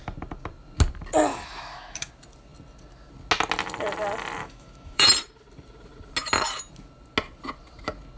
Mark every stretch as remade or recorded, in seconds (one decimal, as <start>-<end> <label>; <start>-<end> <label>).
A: 0.0-1.3 recorded; 1.3-2.1 remade; 2.1-4.4 recorded; 4.4-5.1 remade; 5.1-8.2 recorded